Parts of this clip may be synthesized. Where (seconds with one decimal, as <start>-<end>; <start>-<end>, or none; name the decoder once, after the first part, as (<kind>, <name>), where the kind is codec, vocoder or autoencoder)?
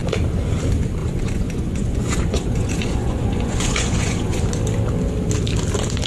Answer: 1.0-4.4 (vocoder, Vocos)